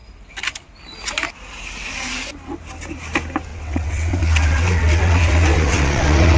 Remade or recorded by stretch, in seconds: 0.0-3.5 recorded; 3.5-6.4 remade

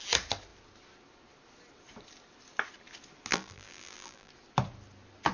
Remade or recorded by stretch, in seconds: 0.0-3.3 recorded; 3.3-4.3 remade; 4.3-5.3 recorded

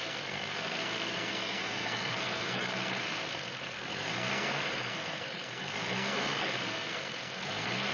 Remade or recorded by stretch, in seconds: 0.0-7.9 remade

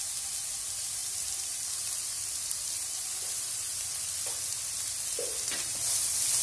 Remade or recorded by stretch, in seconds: 0.0-1.0 recorded; 1.0-4.8 remade; 4.8-6.4 recorded

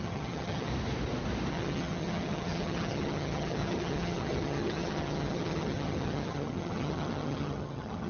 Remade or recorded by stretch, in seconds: 0.0-0.7 remade; 0.7-1.5 recorded; 1.5-8.1 remade

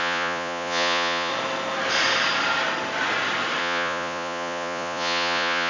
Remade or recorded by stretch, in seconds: 0.0-1.3 remade; 1.3-3.6 recorded; 3.6-5.7 remade

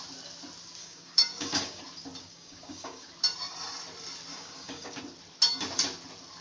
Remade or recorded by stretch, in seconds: 0.0-0.8 recorded; 0.8-1.8 remade; 1.8-2.2 recorded; 2.2-3.1 remade; 3.1-4.3 recorded; 4.3-5.0 remade; 5.0-6.4 recorded